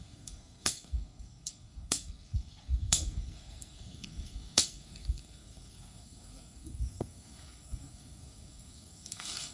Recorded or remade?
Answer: remade